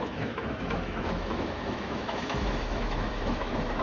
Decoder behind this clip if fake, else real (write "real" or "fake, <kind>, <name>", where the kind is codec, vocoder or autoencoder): fake, autoencoder, DAC-VAE